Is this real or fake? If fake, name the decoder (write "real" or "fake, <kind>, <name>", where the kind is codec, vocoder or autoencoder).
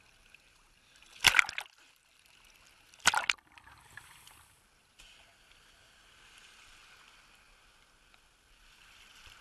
real